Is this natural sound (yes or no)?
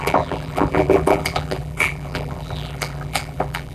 no